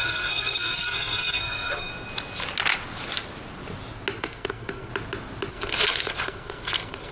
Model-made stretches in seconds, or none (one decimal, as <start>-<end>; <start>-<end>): 0.0-1.9; 4.2-4.9; 5.5-7.1